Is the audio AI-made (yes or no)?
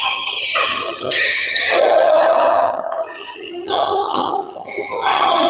yes